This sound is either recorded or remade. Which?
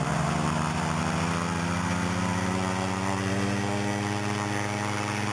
recorded